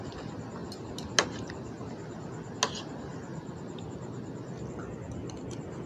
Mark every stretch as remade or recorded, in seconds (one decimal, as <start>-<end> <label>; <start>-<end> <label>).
0.0-5.9 recorded